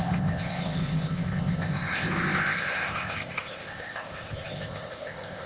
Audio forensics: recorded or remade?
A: remade